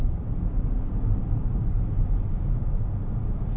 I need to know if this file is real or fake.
real